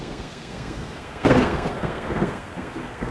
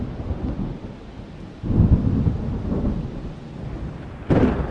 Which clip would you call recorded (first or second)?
second